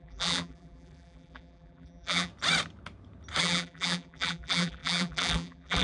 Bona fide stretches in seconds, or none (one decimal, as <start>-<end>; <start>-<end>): 2.3-3.4